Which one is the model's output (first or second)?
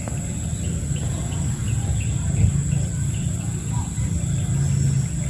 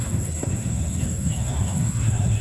second